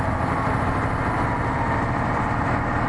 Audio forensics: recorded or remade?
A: remade